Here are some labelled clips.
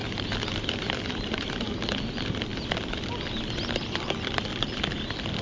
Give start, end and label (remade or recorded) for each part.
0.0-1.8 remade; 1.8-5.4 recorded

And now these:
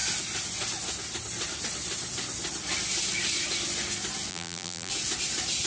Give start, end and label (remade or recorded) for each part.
0.0-4.3 recorded; 4.3-4.9 remade; 4.9-5.7 recorded